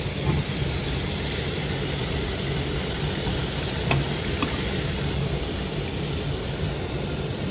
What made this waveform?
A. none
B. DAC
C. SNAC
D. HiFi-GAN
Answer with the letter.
A